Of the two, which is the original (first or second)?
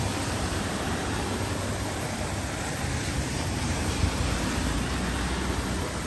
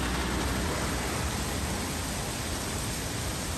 second